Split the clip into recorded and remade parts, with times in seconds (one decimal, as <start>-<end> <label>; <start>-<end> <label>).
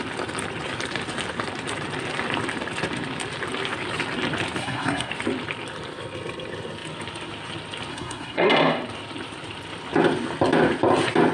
0.0-4.6 recorded; 4.6-5.1 remade; 5.1-7.9 recorded; 7.9-8.5 remade; 8.5-11.3 recorded